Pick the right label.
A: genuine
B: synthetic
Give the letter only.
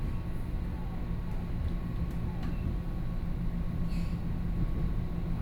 A